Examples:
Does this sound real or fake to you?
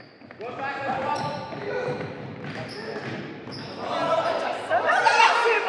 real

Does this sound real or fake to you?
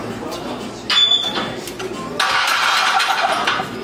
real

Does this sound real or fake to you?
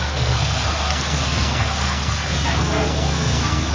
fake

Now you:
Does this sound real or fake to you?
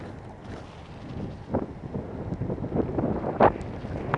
real